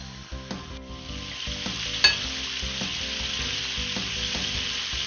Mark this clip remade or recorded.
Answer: recorded